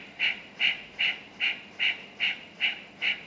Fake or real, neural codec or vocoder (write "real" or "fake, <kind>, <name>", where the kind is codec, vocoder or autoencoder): fake, vocoder, BigVGAN v2